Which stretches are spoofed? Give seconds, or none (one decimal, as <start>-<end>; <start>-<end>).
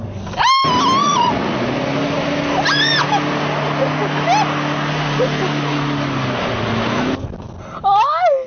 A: 1.0-1.6